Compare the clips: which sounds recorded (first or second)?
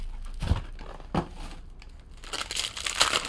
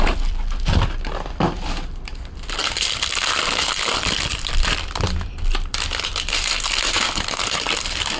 first